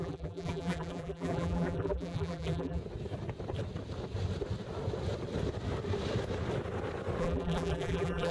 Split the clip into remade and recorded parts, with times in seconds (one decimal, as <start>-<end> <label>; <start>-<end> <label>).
0.0-2.8 remade; 2.8-7.2 recorded; 7.2-8.3 remade